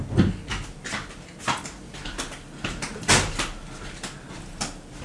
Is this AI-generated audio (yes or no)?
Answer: no